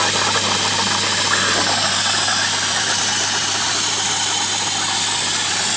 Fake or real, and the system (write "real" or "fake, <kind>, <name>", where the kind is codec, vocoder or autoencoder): real